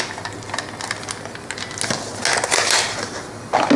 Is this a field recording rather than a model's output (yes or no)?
yes